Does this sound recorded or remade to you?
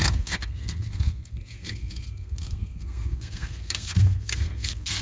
remade